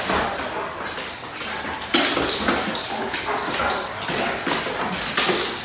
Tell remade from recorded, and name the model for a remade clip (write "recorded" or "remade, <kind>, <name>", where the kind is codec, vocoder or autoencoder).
recorded